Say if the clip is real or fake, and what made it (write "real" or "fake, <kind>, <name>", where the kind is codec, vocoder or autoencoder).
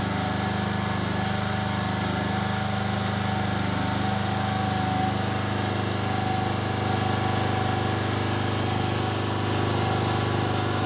real